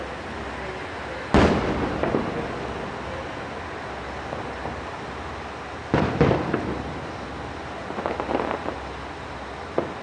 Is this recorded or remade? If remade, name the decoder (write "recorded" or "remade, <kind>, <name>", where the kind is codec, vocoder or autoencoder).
recorded